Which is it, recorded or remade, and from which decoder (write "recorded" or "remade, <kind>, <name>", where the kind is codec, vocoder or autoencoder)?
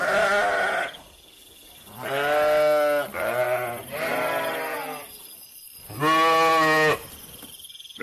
recorded